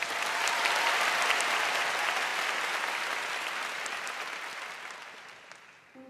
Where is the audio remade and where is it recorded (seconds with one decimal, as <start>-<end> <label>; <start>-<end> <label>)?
0.0-6.1 recorded